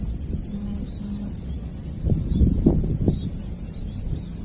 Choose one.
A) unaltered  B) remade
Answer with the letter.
A